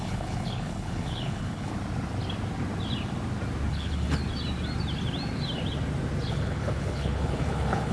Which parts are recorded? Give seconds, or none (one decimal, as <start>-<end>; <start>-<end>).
1.7-3.7; 4.2-6.3